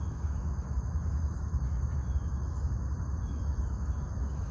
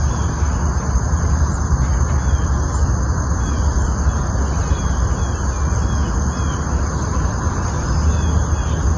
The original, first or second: second